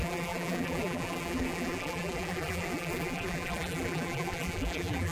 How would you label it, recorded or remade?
remade